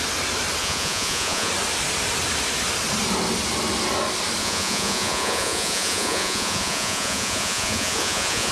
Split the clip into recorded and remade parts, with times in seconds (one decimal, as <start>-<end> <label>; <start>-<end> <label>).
0.0-0.6 recorded; 0.6-1.5 remade; 1.5-4.4 recorded; 4.4-8.5 remade